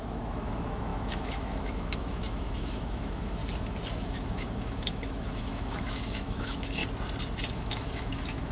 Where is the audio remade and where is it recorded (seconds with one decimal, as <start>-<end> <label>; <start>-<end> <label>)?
0.0-3.4 remade; 3.4-4.0 recorded; 4.0-6.8 remade; 6.8-7.5 recorded; 7.5-8.5 remade